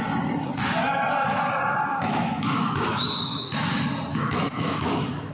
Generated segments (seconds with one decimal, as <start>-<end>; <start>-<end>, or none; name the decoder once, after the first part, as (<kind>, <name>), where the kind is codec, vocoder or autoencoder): 1.9-3.5 (autoencoder, DAC-VAE); 4.1-5.3